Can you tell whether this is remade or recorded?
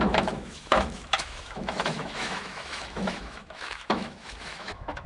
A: remade